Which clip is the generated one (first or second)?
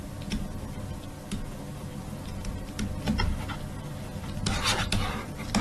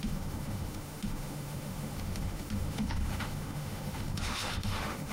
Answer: second